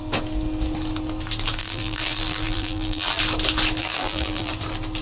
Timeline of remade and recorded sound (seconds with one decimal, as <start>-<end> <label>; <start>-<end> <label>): 0.0-1.6 recorded; 1.6-3.2 remade; 3.2-3.8 recorded; 3.8-4.5 remade; 4.5-5.0 recorded